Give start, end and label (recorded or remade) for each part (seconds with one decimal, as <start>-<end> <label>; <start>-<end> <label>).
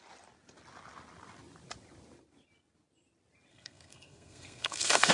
0.0-3.5 recorded; 3.5-5.1 remade